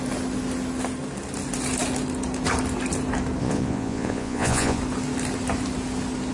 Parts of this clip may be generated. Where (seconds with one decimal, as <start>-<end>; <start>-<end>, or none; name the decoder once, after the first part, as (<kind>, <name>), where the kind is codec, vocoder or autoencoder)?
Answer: 3.4-4.8 (vocoder, Vocos)